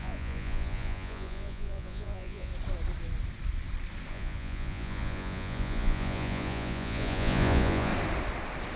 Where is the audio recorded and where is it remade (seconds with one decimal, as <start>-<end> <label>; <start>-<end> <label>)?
0.0-2.5 remade; 2.5-4.1 recorded; 4.1-7.9 remade; 7.9-8.8 recorded